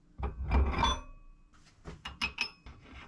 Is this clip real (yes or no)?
yes